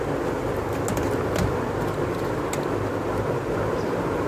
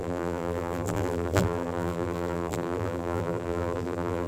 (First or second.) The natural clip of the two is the first